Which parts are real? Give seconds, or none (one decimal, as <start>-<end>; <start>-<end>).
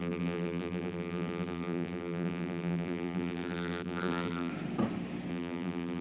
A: 4.5-5.3